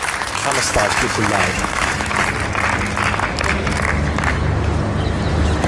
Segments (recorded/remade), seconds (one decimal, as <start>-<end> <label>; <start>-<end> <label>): 0.0-0.4 recorded; 0.4-2.1 remade; 2.1-5.7 recorded